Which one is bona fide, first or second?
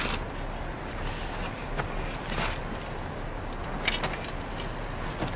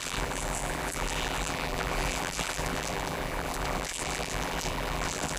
first